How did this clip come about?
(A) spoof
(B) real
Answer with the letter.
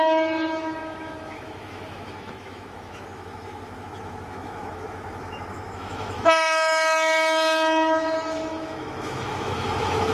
A